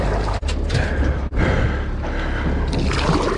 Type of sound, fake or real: real